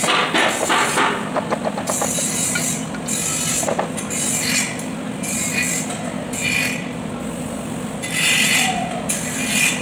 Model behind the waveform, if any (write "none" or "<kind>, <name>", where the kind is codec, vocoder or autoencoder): none